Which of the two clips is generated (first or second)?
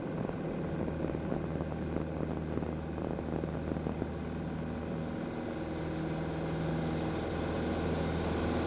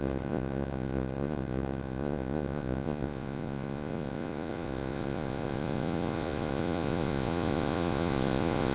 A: second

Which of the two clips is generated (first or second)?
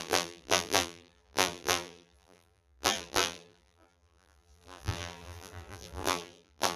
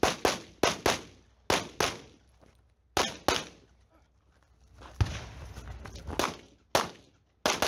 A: first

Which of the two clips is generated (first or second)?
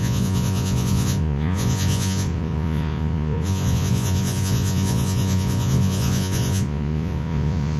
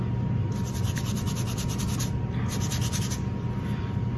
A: first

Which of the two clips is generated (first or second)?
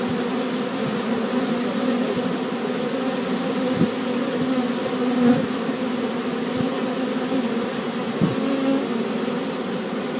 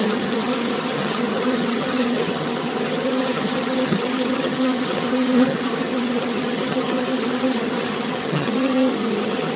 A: second